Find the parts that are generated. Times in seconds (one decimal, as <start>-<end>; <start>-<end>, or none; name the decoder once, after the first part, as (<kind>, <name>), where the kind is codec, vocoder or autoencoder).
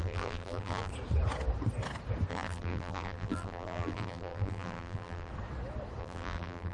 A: 0.0-0.9 (vocoder, BigVGAN v2); 2.3-5.3; 6.0-6.7